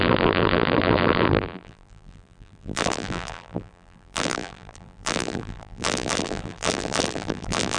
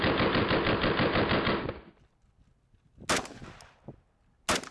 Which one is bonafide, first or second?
second